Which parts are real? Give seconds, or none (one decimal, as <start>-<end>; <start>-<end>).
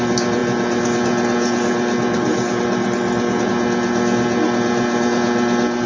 0.0-5.9